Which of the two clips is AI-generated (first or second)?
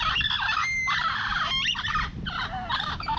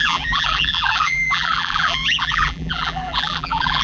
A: second